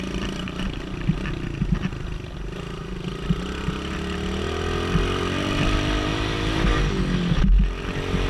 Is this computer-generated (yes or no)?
no